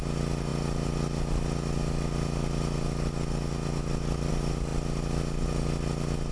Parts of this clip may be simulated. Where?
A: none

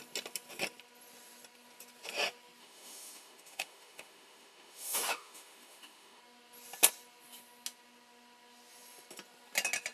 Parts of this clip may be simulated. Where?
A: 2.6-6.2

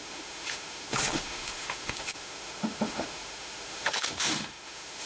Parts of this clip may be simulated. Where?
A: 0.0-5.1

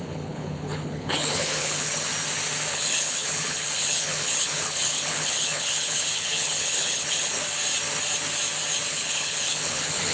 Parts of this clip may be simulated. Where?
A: 0.0-2.1; 2.7-7.4; 8.9-10.1

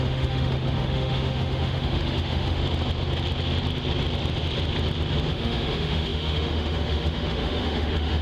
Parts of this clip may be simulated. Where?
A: 0.0-2.6; 5.3-8.2

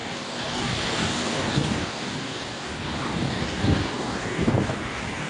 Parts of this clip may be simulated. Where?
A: 0.0-5.3

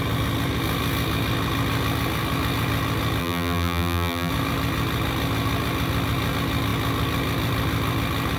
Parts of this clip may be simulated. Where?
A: 3.2-4.3